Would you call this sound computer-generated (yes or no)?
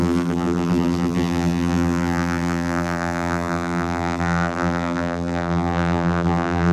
yes